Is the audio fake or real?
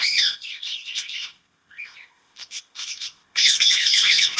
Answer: fake